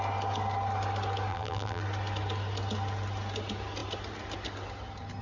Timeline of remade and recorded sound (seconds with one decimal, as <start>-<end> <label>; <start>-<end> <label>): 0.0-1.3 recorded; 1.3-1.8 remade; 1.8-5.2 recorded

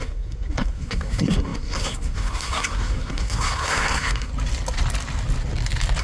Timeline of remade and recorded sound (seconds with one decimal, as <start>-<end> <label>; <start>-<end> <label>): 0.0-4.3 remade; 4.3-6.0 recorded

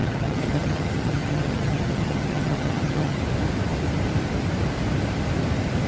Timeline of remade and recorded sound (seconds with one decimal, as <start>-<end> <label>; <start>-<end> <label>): 0.0-3.2 remade; 3.2-5.9 recorded